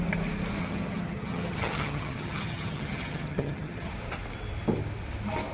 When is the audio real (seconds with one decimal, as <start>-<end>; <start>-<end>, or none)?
0.0-0.6; 3.9-5.5